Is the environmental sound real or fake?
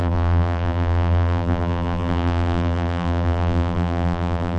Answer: fake